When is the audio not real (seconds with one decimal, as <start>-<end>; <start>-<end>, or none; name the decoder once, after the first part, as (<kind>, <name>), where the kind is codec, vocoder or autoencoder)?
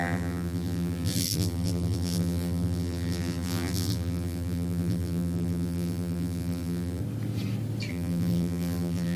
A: 0.0-7.0 (vocoder, BigVGAN v2); 7.9-9.2